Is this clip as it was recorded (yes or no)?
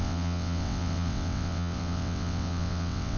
no